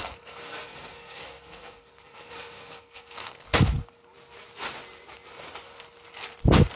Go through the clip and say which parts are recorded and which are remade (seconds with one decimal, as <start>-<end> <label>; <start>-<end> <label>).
0.0-3.5 remade; 3.5-6.8 recorded